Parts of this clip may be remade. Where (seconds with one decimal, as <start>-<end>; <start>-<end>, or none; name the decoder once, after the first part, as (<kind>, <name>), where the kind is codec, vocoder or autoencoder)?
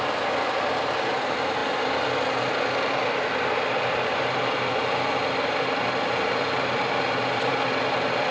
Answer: 0.0-8.3 (vocoder, BigVGAN v2)